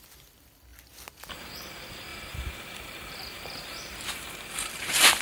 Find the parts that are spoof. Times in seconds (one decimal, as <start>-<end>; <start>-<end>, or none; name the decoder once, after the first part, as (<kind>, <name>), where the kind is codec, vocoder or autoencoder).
2.1-5.2 (vocoder, BigVGAN v2)

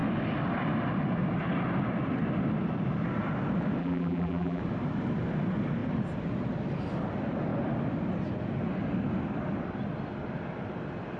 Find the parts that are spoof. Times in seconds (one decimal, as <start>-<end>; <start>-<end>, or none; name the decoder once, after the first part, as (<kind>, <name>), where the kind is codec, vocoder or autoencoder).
3.8-4.6 (vocoder, BigVGAN v2)

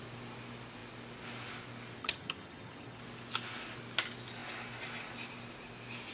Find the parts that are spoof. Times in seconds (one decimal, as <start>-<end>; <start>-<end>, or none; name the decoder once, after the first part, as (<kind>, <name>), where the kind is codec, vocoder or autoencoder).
2.0-3.0 (vocoder, HiFi-GAN)